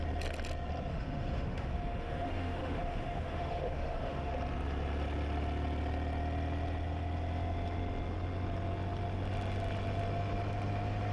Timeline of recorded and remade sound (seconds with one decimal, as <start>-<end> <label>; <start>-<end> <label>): 0.0-0.9 recorded; 0.9-4.3 remade; 4.3-11.1 recorded